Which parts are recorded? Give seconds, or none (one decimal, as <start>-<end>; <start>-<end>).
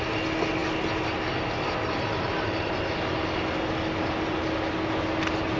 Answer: 0.0-5.6